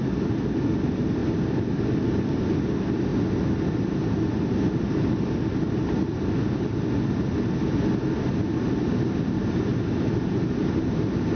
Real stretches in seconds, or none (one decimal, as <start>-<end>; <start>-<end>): 0.0-9.7; 11.0-11.4